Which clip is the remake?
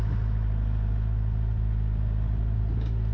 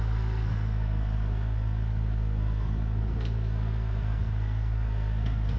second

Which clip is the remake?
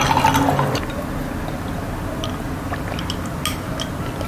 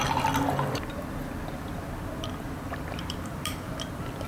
second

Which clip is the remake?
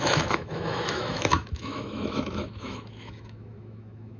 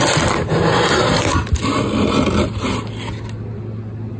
first